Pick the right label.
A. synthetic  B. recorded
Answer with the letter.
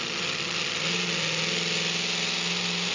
B